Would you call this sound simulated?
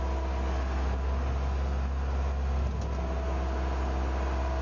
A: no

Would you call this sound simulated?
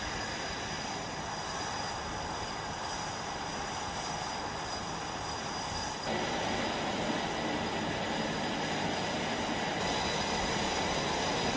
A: no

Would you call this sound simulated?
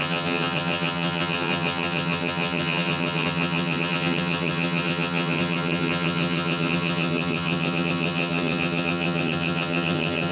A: yes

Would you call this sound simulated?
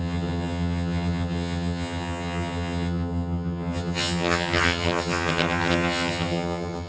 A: yes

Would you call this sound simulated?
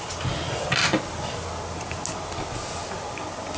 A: no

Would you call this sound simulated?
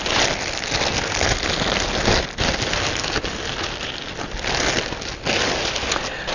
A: no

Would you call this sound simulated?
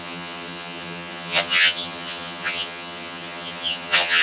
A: yes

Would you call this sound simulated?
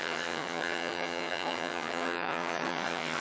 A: yes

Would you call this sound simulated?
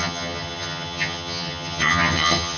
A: yes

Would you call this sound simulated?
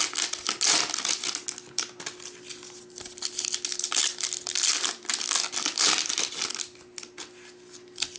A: no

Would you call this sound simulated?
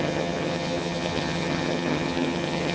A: yes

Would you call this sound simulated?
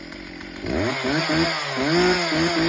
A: no